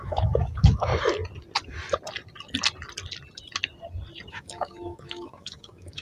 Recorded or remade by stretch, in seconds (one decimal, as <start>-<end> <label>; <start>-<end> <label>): 0.0-0.9 remade; 0.9-4.3 recorded; 4.3-6.0 remade